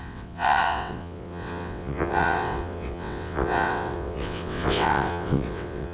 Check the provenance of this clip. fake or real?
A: fake